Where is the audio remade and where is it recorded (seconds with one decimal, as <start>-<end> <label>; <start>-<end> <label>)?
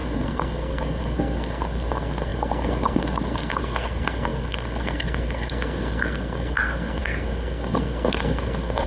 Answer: 0.0-8.9 remade